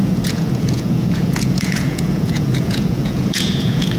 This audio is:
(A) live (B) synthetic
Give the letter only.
B